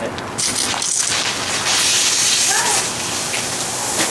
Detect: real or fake real